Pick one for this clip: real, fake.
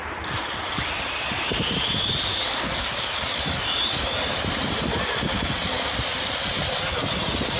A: fake